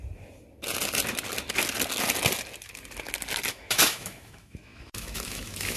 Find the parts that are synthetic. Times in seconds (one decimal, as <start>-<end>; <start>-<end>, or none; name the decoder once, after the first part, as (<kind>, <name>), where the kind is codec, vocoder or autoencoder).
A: 3.5-5.8 (autoencoder, DAC-VAE)